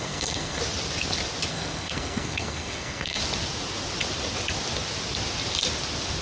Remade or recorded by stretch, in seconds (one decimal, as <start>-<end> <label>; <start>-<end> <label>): 0.0-0.6 remade; 0.6-1.5 recorded; 1.5-3.2 remade; 3.2-6.2 recorded